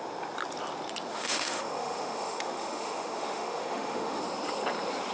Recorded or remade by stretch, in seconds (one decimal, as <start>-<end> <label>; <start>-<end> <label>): 0.0-1.1 recorded; 1.1-4.2 remade; 4.2-5.1 recorded